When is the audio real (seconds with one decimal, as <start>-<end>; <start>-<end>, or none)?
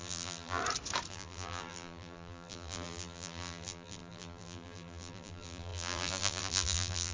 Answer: 0.6-1.1